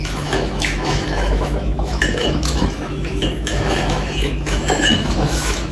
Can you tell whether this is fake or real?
fake